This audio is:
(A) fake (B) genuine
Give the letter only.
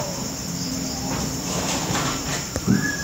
A